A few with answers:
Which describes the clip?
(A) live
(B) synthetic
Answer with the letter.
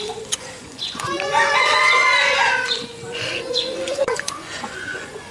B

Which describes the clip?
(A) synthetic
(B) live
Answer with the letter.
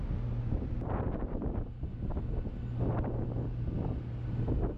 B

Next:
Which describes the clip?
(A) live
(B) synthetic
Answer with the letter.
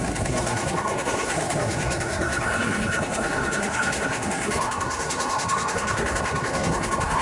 B